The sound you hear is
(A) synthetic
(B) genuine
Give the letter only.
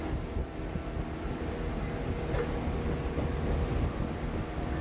B